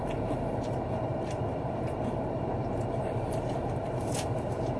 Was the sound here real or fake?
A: fake